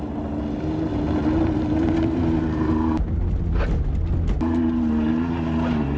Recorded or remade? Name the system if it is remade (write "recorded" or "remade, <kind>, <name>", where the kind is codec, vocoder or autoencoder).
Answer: recorded